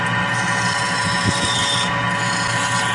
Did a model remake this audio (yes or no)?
no